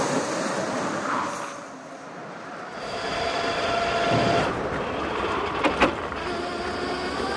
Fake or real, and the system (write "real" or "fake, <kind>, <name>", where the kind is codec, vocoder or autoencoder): real